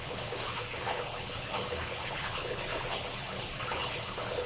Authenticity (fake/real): fake